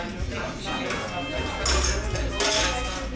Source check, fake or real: real